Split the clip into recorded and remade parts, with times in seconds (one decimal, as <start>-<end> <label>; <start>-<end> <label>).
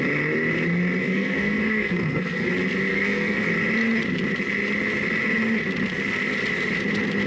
0.0-1.0 recorded; 1.0-2.5 remade; 2.5-2.9 recorded; 2.9-3.5 remade; 3.5-7.3 recorded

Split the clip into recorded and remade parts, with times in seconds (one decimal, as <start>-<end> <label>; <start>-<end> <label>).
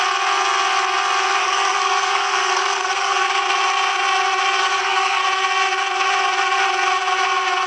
0.0-1.4 recorded; 1.4-3.4 remade; 3.4-4.7 recorded; 4.7-5.2 remade; 5.2-7.7 recorded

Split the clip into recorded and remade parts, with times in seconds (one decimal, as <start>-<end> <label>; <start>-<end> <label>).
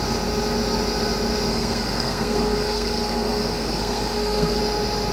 0.0-1.5 recorded; 1.5-4.6 remade; 4.6-5.1 recorded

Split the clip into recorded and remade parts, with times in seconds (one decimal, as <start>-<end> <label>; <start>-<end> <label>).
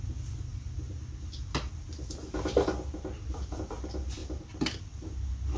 0.0-5.6 recorded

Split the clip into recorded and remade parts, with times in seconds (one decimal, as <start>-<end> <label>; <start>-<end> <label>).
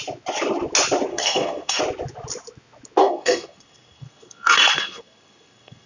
0.0-1.1 recorded; 1.1-1.8 remade; 1.8-3.0 recorded; 3.0-5.9 remade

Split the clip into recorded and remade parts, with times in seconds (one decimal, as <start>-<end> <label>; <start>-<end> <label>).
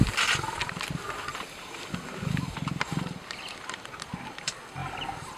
0.0-5.4 recorded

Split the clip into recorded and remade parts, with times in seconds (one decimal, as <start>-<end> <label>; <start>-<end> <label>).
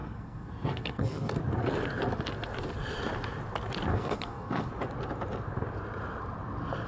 0.0-1.3 remade; 1.3-3.9 recorded; 3.9-4.7 remade; 4.7-6.9 recorded